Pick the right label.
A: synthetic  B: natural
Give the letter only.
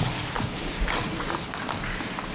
B